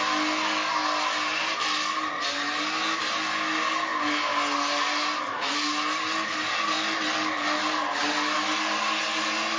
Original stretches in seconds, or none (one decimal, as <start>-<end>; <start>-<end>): 0.0-9.6